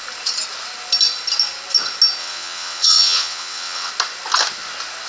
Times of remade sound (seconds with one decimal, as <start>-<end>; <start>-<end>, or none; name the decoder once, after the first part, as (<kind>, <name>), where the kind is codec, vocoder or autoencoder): 2.2-3.9 (vocoder, WaveNeXt)